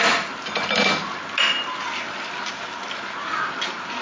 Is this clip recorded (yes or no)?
yes